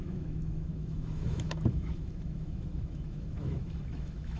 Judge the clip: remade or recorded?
remade